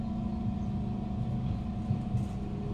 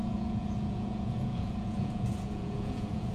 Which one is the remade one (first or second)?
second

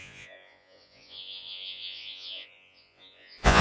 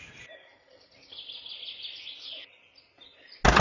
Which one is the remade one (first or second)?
first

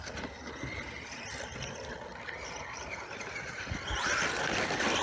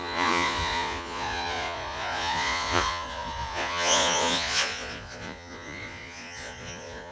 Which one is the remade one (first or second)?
second